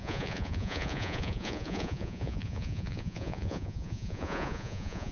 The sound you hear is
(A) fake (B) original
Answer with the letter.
A